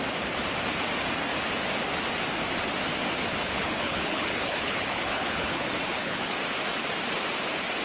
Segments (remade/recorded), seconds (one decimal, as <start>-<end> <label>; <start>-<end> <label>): 0.0-3.5 recorded; 3.5-6.3 remade; 6.3-7.8 recorded